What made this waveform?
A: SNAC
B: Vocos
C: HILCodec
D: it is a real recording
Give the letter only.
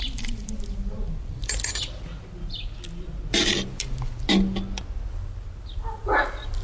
D